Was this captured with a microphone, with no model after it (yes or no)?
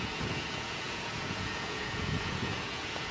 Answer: no